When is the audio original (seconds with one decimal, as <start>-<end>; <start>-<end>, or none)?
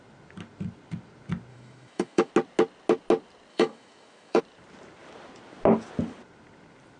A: 0.0-1.5; 2.3-3.5; 4.4-7.0